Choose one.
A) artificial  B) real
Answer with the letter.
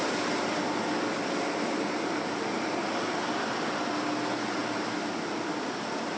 B